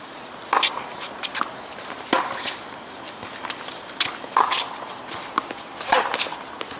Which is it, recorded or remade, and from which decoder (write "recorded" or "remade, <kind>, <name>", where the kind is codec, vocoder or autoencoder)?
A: recorded